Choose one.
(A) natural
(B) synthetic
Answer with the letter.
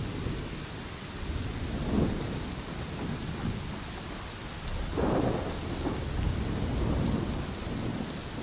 A